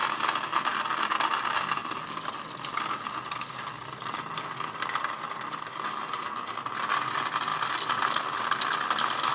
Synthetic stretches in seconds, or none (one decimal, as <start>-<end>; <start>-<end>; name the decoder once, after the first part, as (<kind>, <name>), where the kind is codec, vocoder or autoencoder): none

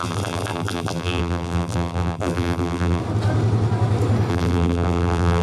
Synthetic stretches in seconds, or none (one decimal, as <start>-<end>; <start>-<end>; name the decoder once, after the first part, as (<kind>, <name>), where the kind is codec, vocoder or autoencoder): 0.0-3.0 (vocoder, BigVGAN v2); 4.3-5.4

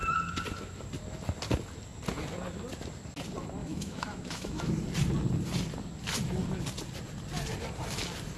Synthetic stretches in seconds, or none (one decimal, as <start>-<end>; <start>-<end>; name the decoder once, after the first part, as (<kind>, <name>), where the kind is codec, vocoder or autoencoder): 3.6-4.6 (autoencoder, DAC-VAE)

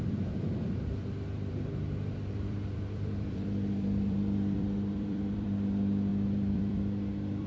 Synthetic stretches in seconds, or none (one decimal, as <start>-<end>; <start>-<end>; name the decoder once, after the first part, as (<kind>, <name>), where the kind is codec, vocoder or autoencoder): 0.0-7.5 (vocoder, BigVGAN v2)

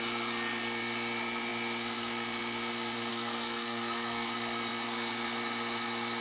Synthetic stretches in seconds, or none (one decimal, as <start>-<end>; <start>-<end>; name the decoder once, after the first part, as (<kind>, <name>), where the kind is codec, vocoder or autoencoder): 3.1-4.3 (codec, SNAC)

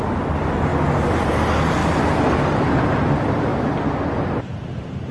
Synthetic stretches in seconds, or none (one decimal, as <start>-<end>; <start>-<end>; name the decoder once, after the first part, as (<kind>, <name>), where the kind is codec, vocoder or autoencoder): 0.0-3.5 (vocoder, BigVGAN v2)

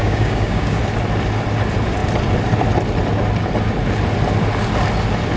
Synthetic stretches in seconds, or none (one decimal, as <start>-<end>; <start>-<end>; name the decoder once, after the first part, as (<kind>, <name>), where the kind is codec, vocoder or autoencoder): 0.0-0.8 (codec, DAC)

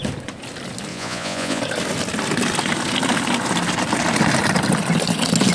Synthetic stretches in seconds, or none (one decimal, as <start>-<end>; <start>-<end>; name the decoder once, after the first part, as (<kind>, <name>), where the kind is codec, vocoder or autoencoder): 0.9-1.6 (vocoder, Vocos)